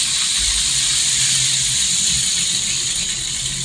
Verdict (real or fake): real